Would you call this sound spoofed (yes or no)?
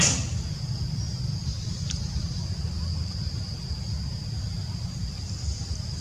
no